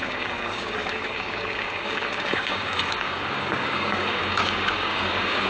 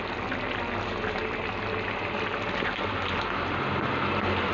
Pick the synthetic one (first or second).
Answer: first